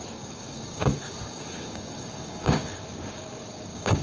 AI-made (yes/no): yes